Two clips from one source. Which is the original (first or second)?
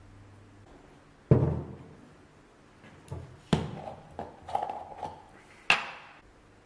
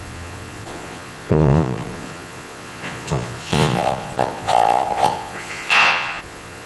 first